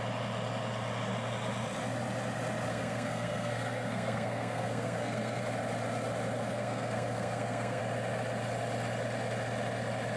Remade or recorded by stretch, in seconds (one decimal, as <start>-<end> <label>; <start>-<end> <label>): 0.0-2.7 recorded; 2.7-5.4 remade; 5.4-6.5 recorded; 6.5-7.8 remade; 7.8-10.2 recorded